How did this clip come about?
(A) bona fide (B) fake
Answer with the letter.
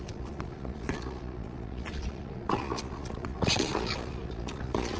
B